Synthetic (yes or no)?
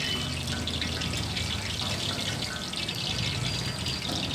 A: no